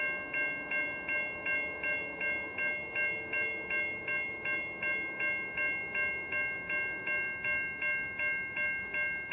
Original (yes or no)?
yes